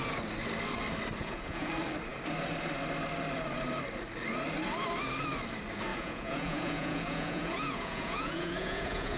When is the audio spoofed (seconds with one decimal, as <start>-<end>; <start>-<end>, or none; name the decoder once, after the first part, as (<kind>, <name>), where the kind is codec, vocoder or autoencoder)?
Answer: 1.2-1.7 (vocoder, Vocos); 5.9-9.2

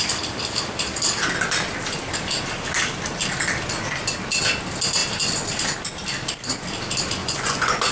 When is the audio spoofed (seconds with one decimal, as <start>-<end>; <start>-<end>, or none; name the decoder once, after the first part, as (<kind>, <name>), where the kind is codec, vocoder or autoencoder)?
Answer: 7.2-7.9 (vocoder, Vocos)